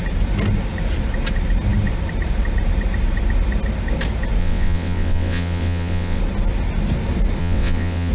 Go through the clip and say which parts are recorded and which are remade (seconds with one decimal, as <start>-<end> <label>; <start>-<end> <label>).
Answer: 0.0-4.4 recorded; 4.4-6.2 remade; 6.2-7.4 recorded; 7.4-8.1 remade

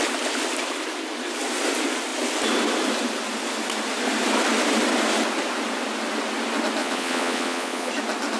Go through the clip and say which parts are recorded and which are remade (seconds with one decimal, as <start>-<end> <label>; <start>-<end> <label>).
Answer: 0.0-6.8 recorded; 6.8-7.9 remade; 7.9-8.4 recorded

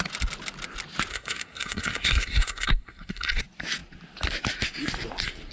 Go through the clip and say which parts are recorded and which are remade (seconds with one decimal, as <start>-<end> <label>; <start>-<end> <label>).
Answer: 0.0-1.1 recorded; 1.1-3.4 remade; 3.4-5.5 recorded